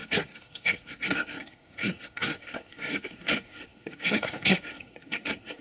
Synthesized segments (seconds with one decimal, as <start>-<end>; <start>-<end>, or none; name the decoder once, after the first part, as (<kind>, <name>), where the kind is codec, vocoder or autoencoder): 0.0-5.6 (codec, SNAC)